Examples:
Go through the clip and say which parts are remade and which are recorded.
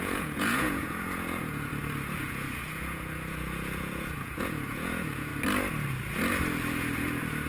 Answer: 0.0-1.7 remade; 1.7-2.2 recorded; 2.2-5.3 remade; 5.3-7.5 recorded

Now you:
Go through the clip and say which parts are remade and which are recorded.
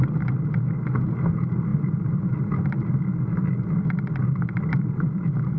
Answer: 0.0-5.6 recorded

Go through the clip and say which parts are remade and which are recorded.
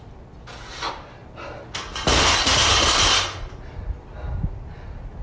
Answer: 0.0-5.2 recorded